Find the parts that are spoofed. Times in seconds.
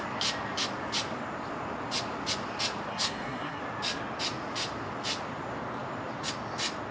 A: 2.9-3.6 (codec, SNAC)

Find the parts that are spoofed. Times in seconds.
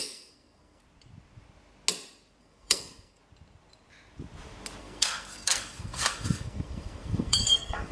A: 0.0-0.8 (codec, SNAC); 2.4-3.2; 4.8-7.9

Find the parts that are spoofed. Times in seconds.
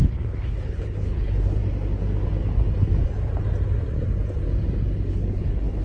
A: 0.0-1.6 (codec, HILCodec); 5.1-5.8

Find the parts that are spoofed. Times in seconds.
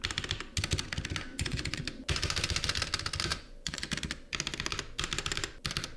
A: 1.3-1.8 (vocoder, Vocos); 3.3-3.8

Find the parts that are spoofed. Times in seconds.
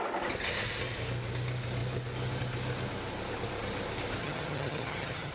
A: 4.2-5.3 (vocoder, HiFi-GAN)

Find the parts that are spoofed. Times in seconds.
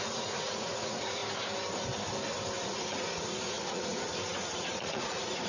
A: 0.0-1.2 (vocoder, Vocos); 2.7-5.5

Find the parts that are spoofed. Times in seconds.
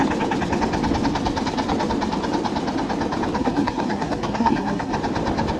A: 3.4-4.9 (codec, SNAC)